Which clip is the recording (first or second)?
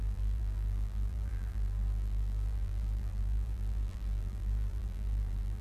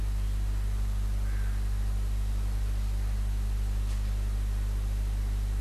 second